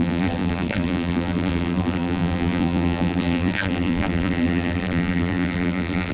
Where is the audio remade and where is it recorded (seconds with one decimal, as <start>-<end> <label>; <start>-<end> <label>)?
0.0-6.1 remade